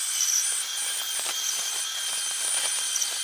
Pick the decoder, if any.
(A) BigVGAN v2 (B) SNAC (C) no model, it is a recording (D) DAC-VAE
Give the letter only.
C